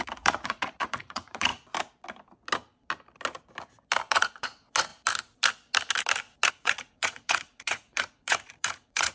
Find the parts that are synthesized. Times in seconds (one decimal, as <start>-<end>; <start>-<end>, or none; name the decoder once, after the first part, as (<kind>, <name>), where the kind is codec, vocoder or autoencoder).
0.0-1.5 (vocoder, Vocos); 4.1-4.9; 6.5-9.1